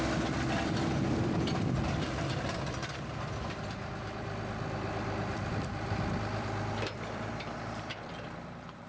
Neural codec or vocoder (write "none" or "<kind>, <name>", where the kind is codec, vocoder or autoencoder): vocoder, BigVGAN v2